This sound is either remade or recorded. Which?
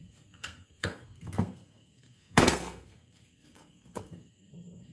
remade